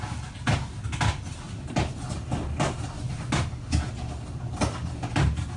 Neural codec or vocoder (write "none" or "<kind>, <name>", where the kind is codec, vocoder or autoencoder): none